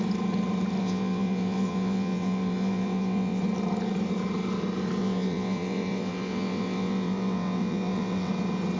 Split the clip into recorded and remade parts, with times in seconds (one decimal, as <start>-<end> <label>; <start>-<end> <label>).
0.0-0.8 recorded; 0.8-3.4 remade; 3.4-5.0 recorded; 5.0-8.3 remade; 8.3-8.8 recorded